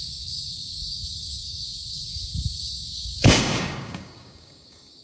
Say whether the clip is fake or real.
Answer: fake